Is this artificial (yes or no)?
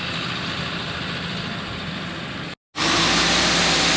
no